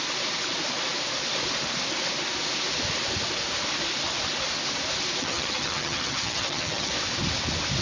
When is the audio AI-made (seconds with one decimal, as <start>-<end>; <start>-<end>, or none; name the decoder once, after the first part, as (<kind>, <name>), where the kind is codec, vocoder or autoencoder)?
5.2-6.9 (vocoder, HiFi-GAN)